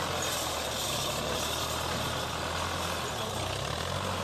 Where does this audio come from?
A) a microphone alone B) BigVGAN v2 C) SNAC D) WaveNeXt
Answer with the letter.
A